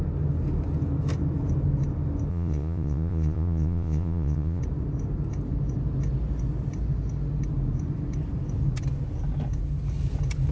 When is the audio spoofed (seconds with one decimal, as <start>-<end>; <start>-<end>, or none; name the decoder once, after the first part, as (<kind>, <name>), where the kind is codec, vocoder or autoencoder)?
2.3-4.6 (vocoder, Vocos)